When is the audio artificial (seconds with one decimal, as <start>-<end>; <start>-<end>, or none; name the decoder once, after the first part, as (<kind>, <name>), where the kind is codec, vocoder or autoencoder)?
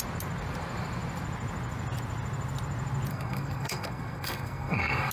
3.1-5.1 (codec, SNAC)